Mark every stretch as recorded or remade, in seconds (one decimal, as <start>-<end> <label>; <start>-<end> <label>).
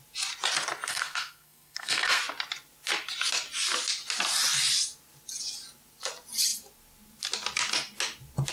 0.0-0.9 recorded; 0.9-2.2 remade; 2.2-8.5 recorded